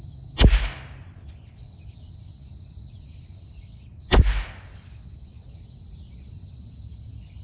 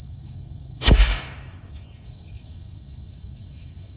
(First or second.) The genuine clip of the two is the first